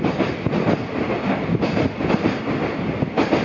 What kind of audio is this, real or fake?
real